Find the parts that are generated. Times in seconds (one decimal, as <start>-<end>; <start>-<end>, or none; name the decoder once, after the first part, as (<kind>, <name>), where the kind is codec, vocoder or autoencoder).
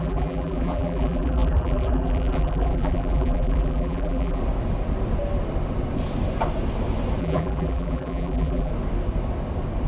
0.0-4.4 (vocoder, BigVGAN v2); 7.2-8.7